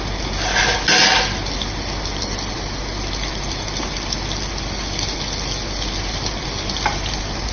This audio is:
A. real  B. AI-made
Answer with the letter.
A